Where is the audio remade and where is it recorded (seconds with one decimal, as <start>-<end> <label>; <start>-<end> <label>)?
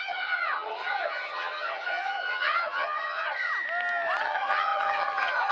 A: 0.0-3.5 remade; 3.5-4.2 recorded; 4.2-5.5 remade